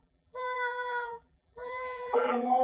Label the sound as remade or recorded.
remade